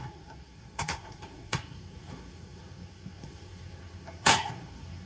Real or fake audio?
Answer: fake